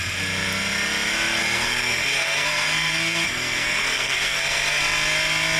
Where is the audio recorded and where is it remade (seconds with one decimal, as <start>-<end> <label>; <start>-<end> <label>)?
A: 0.0-1.4 recorded; 1.4-4.8 remade; 4.8-5.6 recorded